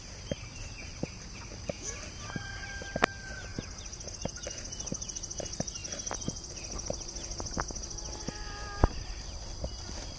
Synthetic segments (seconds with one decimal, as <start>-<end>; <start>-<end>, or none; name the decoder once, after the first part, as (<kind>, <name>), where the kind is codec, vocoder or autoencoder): none

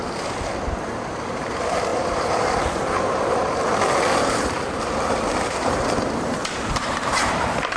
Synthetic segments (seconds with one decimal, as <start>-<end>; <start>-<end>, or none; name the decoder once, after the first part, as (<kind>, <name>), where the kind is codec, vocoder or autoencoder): 0.9-3.2 (vocoder, BigVGAN v2); 4.2-7.8

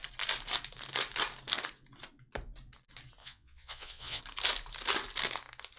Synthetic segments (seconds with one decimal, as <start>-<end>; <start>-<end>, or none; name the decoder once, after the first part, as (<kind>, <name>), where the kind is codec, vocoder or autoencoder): 3.2-4.2 (vocoder, Vocos)

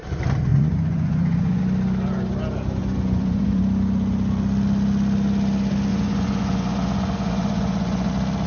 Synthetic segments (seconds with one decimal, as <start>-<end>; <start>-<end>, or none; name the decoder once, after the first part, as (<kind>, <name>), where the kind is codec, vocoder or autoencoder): 0.5-1.6 (vocoder, Vocos); 2.8-3.6; 5.9-8.1

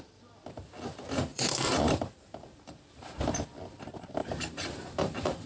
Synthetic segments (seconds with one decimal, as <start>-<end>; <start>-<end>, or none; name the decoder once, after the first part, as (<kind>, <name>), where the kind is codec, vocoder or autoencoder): 1.3-2.7 (vocoder, BigVGAN v2); 4.2-5.5

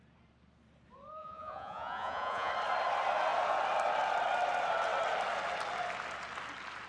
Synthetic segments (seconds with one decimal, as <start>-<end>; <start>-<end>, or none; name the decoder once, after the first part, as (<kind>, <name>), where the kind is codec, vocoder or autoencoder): 1.2-2.5 (vocoder, Vocos)

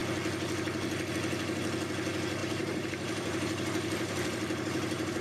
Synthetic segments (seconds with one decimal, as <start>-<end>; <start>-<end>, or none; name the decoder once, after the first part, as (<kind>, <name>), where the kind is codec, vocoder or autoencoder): 2.4-5.2 (vocoder, BigVGAN v2)